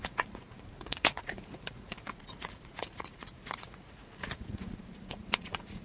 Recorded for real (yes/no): no